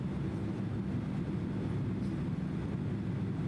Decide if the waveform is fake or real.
real